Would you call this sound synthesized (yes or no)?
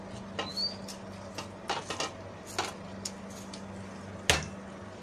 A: no